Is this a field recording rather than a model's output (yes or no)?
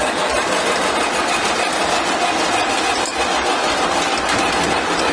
yes